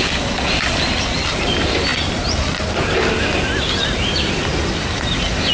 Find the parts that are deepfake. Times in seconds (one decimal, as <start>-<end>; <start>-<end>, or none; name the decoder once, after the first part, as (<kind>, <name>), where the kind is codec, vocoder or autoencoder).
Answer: none